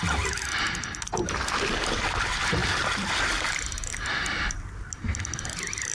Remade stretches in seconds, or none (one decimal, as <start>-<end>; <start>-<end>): none